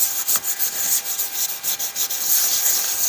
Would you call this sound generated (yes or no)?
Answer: no